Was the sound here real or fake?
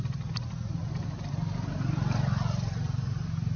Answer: real